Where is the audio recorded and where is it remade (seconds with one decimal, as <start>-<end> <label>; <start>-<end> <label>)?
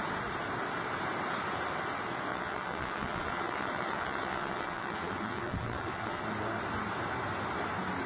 0.0-2.3 recorded; 2.3-6.2 remade; 6.2-8.1 recorded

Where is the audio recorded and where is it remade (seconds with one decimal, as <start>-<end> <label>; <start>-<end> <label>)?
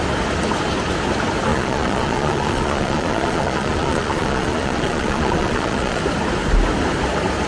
0.0-1.5 recorded; 1.5-6.0 remade; 6.0-7.5 recorded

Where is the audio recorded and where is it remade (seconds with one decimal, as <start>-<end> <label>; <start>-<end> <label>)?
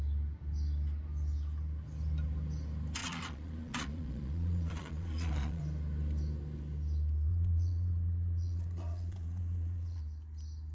0.0-3.0 recorded; 3.0-5.6 remade; 5.6-7.3 recorded; 7.3-10.0 remade; 10.0-10.7 recorded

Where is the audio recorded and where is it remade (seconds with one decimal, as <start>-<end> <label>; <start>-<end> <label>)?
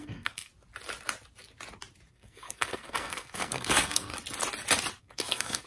0.0-0.5 remade; 0.5-2.1 recorded; 2.1-4.1 remade; 4.1-5.0 recorded; 5.0-5.7 remade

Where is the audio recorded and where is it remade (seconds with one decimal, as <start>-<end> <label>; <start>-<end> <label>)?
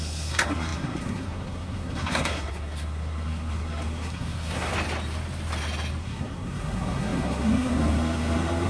0.0-4.7 remade; 4.7-6.0 recorded; 6.0-8.7 remade